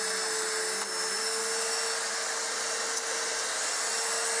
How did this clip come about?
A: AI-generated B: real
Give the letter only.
B